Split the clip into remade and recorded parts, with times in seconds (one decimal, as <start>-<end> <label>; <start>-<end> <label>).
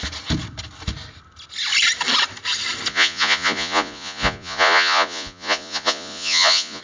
0.0-2.9 recorded; 2.9-6.8 remade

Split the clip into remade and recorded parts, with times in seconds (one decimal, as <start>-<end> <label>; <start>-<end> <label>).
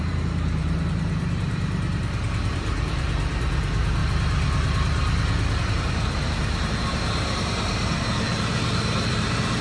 0.0-4.0 remade; 4.0-5.6 recorded; 5.6-9.6 remade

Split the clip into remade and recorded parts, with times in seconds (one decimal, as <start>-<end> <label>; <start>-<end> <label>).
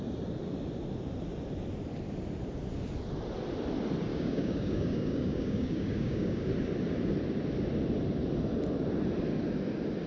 0.0-4.1 recorded; 4.1-6.5 remade; 6.5-10.1 recorded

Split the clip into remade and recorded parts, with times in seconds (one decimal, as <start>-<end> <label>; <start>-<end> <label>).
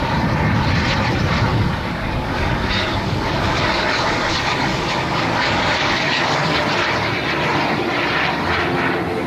0.0-1.5 recorded; 1.5-6.6 remade; 6.6-9.3 recorded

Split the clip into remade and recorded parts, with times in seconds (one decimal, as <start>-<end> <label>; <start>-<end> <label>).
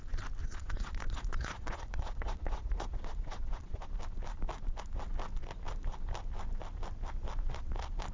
0.0-0.4 recorded; 0.4-3.9 remade; 3.9-8.1 recorded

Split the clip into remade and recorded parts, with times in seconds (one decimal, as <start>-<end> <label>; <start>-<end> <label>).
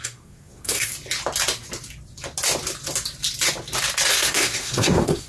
0.0-0.9 remade; 0.9-4.1 recorded; 4.1-5.3 remade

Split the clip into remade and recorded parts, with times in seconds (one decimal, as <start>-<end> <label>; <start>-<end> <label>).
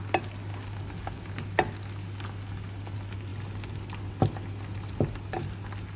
0.0-6.0 recorded